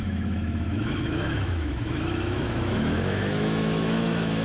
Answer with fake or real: fake